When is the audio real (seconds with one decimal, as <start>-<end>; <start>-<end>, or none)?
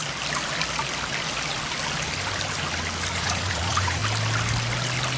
0.0-3.1; 4.0-5.2